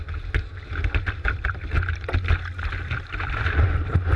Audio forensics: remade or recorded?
recorded